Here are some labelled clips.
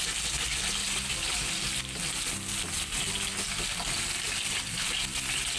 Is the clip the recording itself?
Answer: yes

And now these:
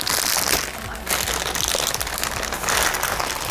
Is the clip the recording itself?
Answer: yes